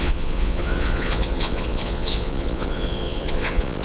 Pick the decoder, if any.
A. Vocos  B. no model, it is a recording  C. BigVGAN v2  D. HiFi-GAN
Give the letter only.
A